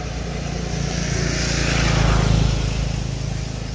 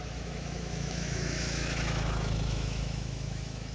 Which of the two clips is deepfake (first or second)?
second